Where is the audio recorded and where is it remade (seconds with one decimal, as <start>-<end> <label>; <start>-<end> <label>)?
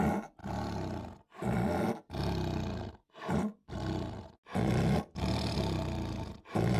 0.0-6.8 recorded